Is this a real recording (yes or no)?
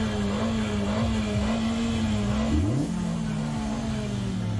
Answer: yes